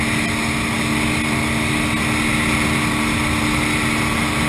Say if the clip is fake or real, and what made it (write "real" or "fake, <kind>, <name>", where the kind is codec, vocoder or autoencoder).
real